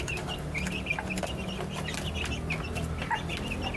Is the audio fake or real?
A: real